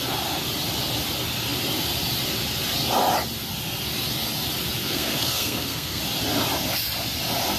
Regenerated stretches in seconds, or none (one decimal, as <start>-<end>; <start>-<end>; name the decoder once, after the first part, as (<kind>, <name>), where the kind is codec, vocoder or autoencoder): 4.8-6.0 (codec, SNAC)